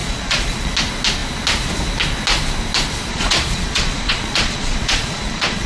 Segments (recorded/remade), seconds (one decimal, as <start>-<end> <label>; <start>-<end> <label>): 0.0-0.7 remade; 0.7-3.1 recorded; 3.1-5.7 remade